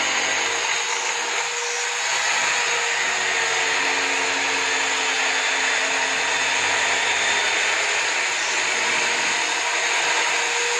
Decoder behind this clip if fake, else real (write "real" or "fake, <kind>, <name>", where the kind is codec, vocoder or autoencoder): real